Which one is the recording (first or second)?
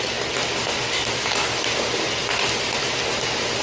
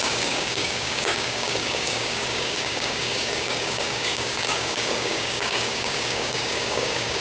first